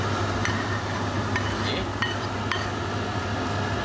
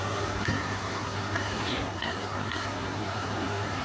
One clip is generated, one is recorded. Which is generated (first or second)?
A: second